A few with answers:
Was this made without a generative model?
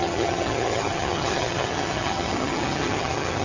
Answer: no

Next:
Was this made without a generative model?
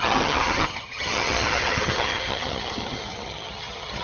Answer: no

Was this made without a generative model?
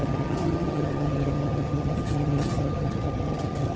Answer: no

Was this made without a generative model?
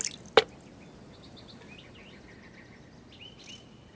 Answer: yes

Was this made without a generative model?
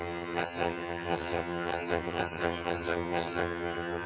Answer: no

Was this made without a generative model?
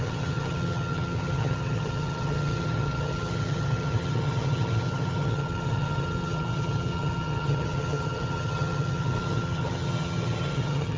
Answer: no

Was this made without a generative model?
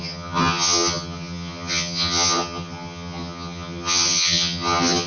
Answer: no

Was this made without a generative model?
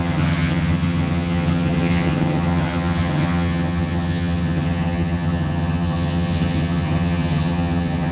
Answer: no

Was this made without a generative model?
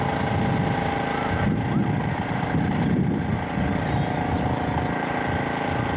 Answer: yes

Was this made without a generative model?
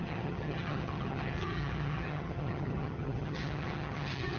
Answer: no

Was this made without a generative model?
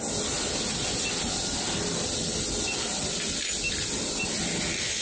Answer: yes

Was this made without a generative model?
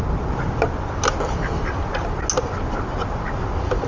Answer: yes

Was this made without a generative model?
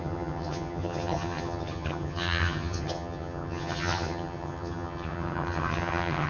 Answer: no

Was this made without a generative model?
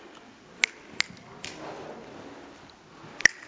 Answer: yes